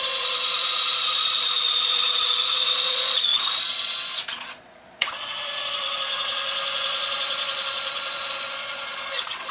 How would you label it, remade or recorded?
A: remade